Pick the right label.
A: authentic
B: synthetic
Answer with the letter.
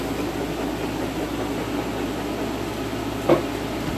A